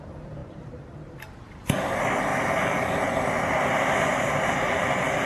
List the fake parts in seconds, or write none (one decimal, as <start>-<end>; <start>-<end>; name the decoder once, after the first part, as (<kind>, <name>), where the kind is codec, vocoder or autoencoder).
0.4-1.1 (vocoder, BigVGAN v2); 2.3-3.4; 4.1-5.3